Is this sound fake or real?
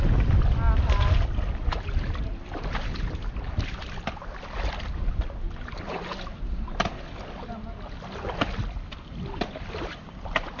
real